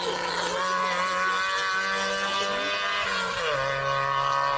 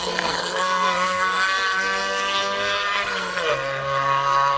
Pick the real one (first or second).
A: first